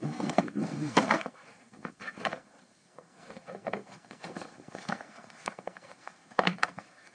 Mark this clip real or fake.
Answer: fake